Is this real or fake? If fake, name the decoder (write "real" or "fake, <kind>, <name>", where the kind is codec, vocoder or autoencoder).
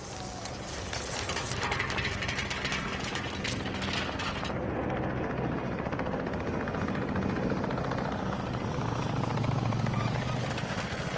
real